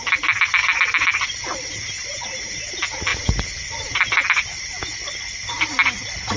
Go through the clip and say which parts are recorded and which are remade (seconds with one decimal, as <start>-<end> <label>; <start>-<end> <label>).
0.0-0.6 recorded; 0.6-2.6 remade; 2.6-6.4 recorded